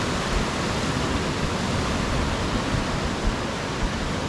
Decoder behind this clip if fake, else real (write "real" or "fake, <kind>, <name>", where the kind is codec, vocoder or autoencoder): real